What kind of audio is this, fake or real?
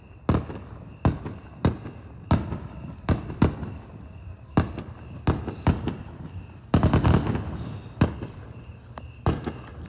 real